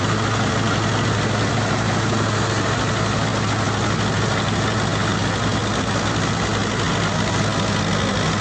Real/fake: real